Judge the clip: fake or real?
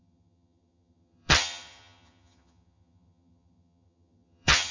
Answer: fake